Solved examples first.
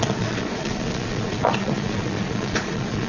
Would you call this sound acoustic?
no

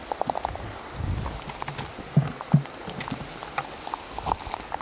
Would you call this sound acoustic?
yes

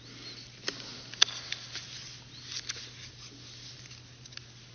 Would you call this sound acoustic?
yes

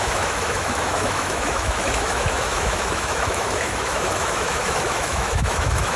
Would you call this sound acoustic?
no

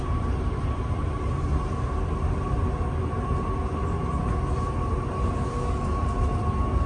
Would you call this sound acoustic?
yes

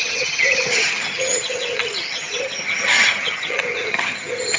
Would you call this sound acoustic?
no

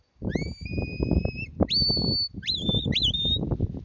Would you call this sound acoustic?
yes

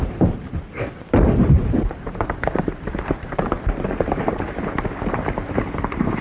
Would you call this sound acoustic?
no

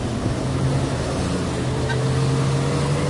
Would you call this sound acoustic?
yes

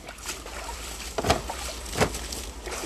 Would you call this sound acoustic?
yes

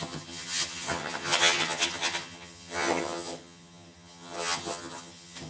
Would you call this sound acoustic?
no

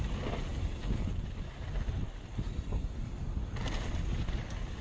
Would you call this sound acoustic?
yes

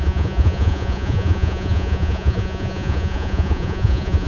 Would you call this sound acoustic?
no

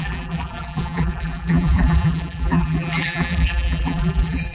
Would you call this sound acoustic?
no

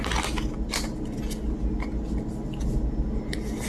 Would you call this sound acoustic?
yes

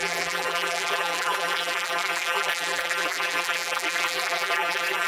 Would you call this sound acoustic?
no